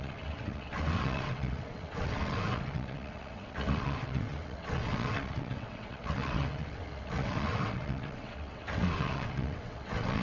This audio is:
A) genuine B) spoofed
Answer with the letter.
B